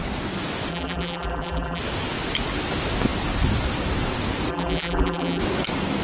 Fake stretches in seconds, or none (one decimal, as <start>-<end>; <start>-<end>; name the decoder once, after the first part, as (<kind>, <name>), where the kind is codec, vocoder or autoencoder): 0.7-1.8 (vocoder, BigVGAN v2); 4.5-5.4